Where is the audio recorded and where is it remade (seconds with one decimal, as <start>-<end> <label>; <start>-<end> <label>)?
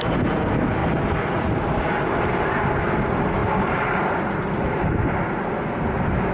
0.0-0.8 recorded; 0.8-1.9 remade; 1.9-3.4 recorded; 3.4-4.8 remade; 4.8-6.3 recorded